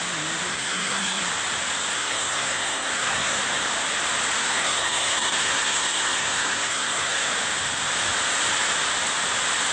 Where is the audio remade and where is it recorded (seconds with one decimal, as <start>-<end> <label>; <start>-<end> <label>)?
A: 0.0-0.5 recorded; 0.5-1.2 remade; 1.2-1.9 recorded; 1.9-3.4 remade; 3.4-4.4 recorded; 4.4-7.3 remade; 7.3-9.7 recorded